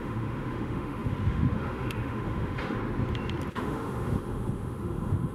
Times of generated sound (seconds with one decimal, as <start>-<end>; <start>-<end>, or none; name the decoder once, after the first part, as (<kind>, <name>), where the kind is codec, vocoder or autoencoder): 0.0-2.8 (autoencoder, DAC-VAE); 3.5-5.3